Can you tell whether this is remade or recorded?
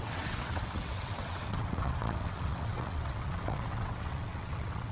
remade